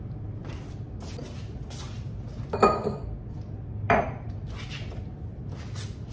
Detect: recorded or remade recorded